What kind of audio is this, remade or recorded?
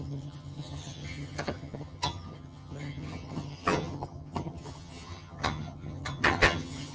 remade